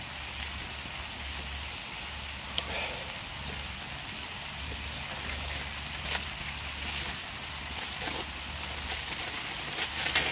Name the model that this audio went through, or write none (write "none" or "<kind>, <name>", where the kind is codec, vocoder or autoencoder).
none